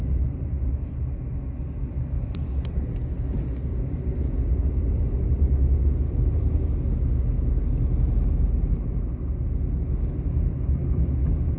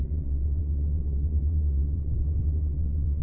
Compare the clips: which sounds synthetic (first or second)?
second